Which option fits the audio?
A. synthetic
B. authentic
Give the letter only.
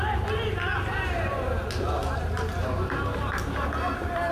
B